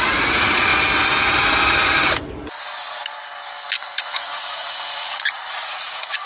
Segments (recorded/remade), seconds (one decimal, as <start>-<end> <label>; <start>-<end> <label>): 0.0-0.7 remade; 0.7-3.8 recorded; 3.8-6.3 remade